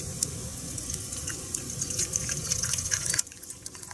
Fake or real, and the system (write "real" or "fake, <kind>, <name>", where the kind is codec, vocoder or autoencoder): fake, vocoder, Vocos